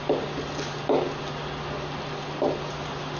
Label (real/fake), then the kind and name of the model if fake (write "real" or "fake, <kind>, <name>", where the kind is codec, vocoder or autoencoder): real